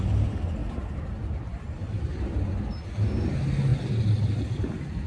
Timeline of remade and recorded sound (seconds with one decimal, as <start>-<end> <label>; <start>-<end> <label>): 0.0-0.6 recorded; 0.6-2.3 remade; 2.3-5.1 recorded